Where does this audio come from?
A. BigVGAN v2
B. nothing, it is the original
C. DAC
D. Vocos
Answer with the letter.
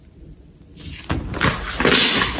B